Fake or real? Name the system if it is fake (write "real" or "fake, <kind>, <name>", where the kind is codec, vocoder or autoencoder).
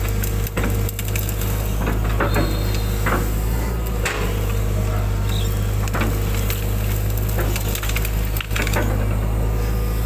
real